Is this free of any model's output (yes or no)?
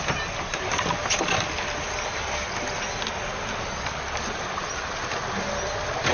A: yes